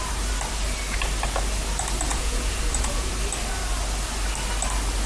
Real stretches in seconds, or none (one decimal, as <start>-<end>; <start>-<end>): 0.0-2.1; 3.1-5.1